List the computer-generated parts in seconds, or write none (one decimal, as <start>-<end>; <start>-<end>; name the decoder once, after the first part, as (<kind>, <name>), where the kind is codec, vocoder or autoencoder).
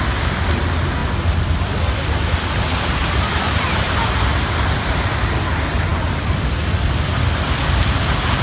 none